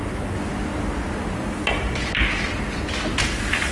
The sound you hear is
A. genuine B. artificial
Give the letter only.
A